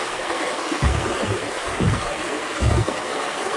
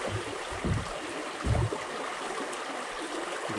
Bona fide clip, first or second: second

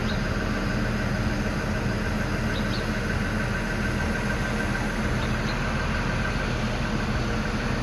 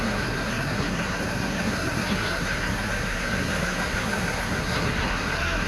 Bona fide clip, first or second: first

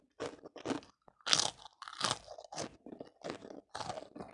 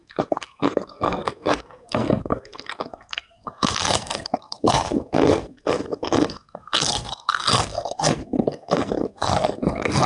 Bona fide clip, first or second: first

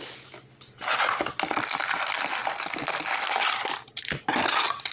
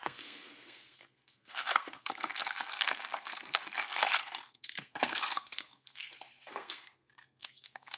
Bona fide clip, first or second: first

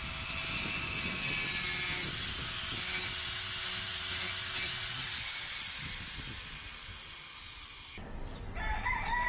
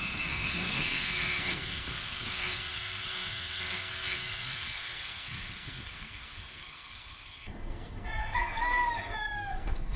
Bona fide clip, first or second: first